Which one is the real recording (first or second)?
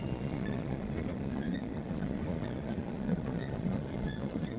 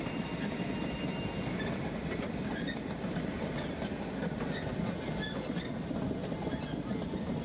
second